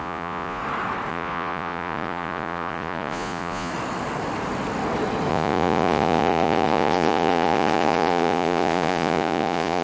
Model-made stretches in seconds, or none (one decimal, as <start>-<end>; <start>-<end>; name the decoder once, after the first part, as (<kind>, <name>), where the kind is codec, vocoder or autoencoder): 0.0-0.6 (vocoder, Vocos); 1.1-3.7; 5.3-9.8